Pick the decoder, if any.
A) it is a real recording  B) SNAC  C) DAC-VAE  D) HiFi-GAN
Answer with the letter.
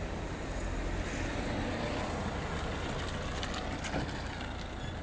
A